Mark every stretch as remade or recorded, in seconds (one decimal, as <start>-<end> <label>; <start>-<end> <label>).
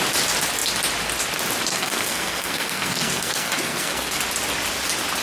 0.0-1.7 recorded; 1.7-4.2 remade; 4.2-5.2 recorded